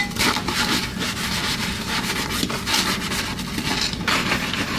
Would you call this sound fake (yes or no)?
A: no